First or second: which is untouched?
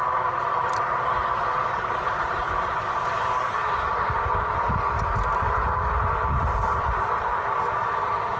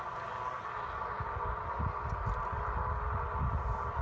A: second